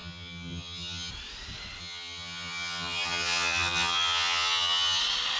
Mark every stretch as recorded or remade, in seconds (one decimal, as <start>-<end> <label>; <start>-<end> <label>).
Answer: 0.0-1.1 remade; 1.1-1.8 recorded; 1.8-5.0 remade; 5.0-5.4 recorded